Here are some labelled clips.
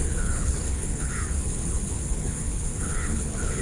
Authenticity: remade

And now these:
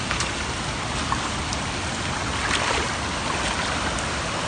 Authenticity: recorded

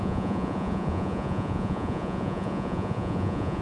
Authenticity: remade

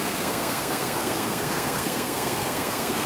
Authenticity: remade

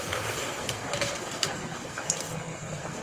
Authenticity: remade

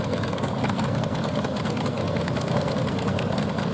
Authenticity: remade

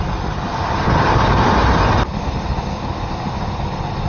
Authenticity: recorded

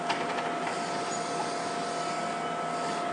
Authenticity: recorded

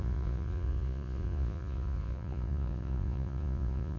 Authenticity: remade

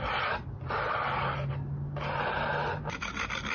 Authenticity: recorded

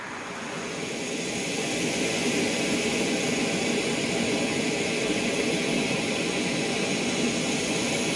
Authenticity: remade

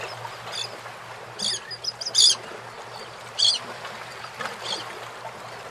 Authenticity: recorded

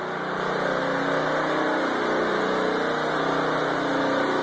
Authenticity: recorded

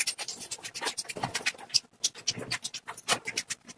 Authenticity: recorded